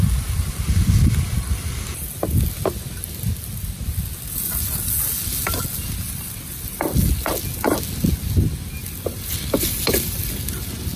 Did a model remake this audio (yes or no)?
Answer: no